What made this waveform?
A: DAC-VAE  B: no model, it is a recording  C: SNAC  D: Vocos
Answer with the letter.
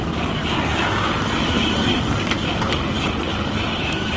B